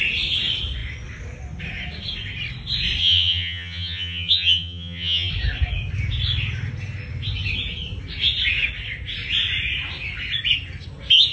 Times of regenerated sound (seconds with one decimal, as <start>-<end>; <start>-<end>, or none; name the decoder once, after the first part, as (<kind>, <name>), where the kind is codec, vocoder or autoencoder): 3.0-5.3 (vocoder, HiFi-GAN)

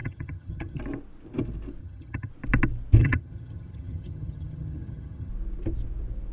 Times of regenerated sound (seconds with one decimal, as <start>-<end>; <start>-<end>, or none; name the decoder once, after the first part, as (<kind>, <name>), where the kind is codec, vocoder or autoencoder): 0.0-0.8 (vocoder, HiFi-GAN); 1.8-2.3; 3.0-5.3

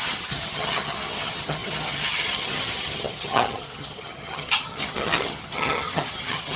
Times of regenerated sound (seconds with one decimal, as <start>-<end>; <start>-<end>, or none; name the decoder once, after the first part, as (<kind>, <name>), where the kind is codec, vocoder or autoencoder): 0.0-6.6 (vocoder, HiFi-GAN)

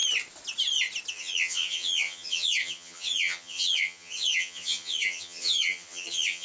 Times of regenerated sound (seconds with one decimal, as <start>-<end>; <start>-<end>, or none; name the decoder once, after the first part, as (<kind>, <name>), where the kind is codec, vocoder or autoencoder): 1.1-6.4 (vocoder, HiFi-GAN)

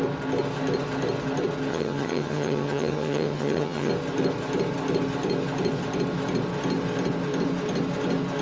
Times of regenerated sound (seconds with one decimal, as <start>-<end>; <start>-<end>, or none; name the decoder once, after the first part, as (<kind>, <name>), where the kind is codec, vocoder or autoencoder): 1.7-3.9 (vocoder, HiFi-GAN)

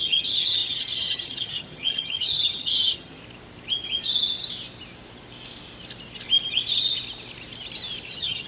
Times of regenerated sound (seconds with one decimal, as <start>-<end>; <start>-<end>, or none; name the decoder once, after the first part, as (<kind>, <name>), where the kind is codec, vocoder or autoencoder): 0.0-3.2 (vocoder, HiFi-GAN); 8.1-8.5

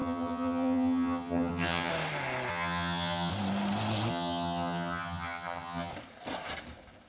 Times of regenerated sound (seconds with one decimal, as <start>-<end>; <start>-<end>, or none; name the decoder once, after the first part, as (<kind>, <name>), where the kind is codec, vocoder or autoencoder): 0.0-1.9 (vocoder, HiFi-GAN); 2.5-3.3; 4.1-5.9